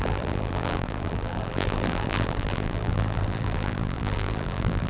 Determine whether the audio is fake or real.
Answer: fake